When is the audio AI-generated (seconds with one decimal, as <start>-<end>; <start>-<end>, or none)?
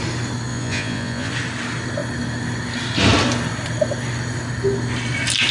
0.5-1.3